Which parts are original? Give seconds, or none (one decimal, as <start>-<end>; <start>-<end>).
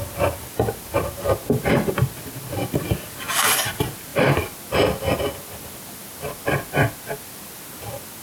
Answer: 0.0-8.2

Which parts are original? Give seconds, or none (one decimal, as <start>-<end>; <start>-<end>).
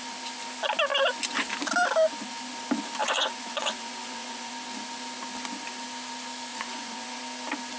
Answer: 0.0-3.0; 4.5-6.5; 7.2-7.8